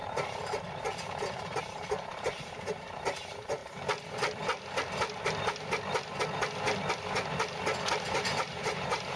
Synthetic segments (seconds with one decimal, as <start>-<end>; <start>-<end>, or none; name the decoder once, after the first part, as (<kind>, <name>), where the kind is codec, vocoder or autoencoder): 0.0-3.6 (vocoder, BigVGAN v2); 8.1-9.2